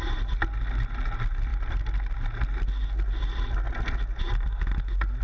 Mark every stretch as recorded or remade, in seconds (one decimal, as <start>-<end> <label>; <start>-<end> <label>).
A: 0.0-5.2 recorded